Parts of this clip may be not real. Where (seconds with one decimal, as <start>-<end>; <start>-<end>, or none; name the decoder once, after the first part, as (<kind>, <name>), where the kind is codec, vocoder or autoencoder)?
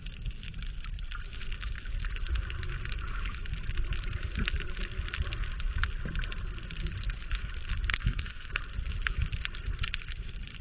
7.9-8.6 (codec, SNAC)